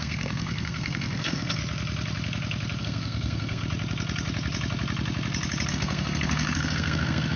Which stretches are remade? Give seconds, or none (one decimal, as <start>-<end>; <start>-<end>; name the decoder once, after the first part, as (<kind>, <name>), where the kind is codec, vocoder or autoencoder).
0.0-1.6 (codec, SNAC); 2.8-3.6; 5.7-7.4

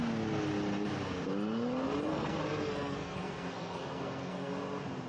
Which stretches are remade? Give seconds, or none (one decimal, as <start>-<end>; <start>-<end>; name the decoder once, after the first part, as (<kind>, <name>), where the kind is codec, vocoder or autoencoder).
2.1-4.5 (codec, SNAC)